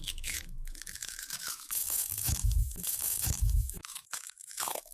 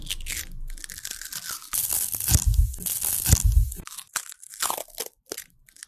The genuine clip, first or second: second